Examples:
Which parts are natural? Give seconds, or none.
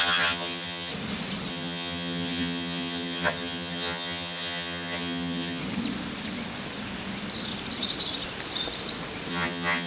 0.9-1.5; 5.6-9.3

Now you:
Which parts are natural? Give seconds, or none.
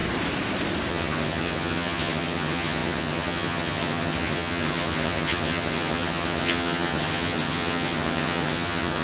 0.0-0.9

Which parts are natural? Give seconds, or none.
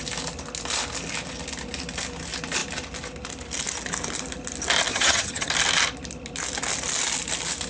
0.0-4.9; 5.5-7.7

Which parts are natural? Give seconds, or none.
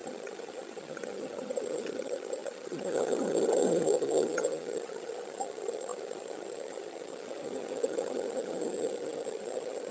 none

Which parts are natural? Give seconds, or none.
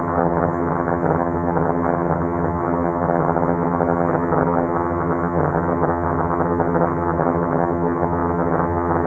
none